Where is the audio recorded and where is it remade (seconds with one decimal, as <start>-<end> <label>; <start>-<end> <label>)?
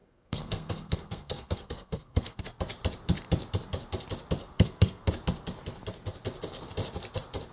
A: 0.0-2.4 remade; 2.4-4.4 recorded; 4.4-5.1 remade; 5.1-7.5 recorded